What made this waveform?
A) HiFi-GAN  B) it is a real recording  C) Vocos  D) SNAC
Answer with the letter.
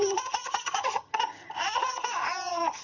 A